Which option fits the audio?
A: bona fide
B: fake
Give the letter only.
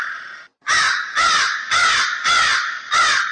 A